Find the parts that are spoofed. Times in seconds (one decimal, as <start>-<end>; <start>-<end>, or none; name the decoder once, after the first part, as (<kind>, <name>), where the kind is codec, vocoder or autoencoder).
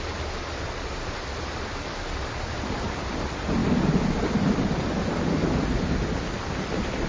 none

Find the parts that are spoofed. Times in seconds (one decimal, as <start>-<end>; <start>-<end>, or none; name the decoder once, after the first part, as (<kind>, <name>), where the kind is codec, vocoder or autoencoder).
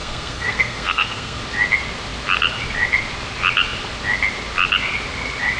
0.0-1.4 (codec, SNAC)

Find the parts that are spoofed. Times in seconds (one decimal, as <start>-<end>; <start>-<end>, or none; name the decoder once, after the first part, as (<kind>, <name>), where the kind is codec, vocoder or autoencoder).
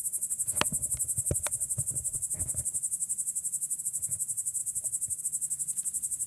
none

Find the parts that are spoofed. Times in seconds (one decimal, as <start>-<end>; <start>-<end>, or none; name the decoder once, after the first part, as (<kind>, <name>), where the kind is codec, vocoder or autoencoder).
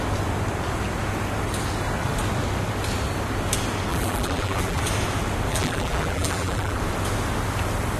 3.9-4.8 (vocoder, BigVGAN v2); 5.5-6.8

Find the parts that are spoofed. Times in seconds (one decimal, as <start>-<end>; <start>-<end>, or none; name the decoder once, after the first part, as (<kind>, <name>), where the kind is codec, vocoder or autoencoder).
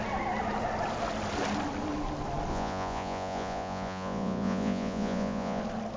2.5-5.6 (vocoder, Vocos)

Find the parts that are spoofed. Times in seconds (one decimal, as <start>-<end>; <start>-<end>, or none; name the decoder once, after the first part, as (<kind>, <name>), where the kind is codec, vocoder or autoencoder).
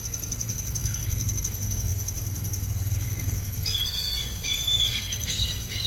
0.0-5.9 (codec, SNAC)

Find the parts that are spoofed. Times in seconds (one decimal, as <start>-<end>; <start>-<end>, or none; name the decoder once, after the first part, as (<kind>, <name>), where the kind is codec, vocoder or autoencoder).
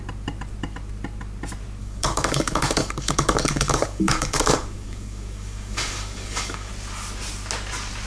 1.8-6.7 (codec, DAC)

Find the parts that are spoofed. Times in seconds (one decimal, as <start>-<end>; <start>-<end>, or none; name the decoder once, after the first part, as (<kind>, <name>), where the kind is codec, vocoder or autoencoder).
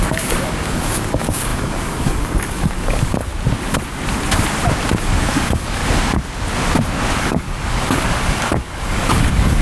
0.0-3.3 (codec, DAC); 5.0-5.8; 7.2-9.6